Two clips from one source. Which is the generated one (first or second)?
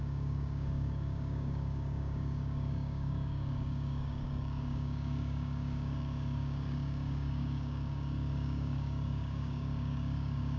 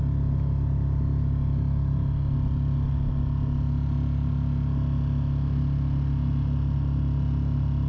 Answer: first